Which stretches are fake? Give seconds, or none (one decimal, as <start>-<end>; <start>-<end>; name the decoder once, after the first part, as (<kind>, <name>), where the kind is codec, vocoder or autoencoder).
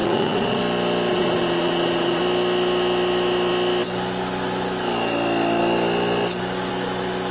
0.0-0.6 (vocoder, Vocos); 1.1-2.2